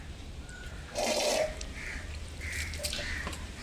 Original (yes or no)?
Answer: no